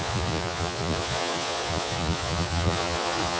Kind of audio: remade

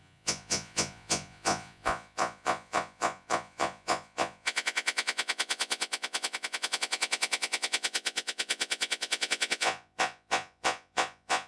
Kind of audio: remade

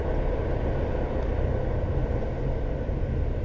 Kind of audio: recorded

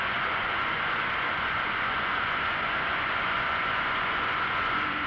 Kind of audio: remade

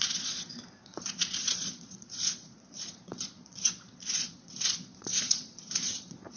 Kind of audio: remade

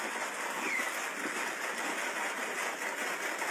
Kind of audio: recorded